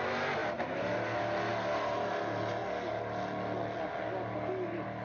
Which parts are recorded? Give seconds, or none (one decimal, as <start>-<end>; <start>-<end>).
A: 0.0-5.0